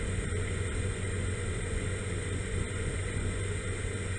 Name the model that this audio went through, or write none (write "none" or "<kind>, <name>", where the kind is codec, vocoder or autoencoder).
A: vocoder, Vocos